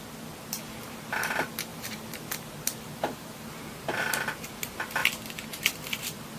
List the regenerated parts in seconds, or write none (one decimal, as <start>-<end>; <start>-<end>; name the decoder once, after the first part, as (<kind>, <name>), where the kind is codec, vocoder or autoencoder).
0.0-5.0 (vocoder, BigVGAN v2); 5.6-6.4